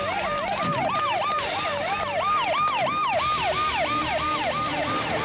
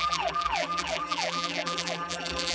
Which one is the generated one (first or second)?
second